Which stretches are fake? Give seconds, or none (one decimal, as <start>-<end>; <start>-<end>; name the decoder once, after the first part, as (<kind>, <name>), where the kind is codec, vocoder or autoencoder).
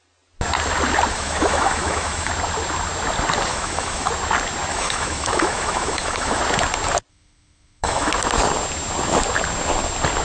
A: 1.1-2.3 (autoencoder, DAC-VAE); 3.5-4.1; 4.7-6.4; 7.1-8.1